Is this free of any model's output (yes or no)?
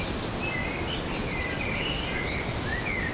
yes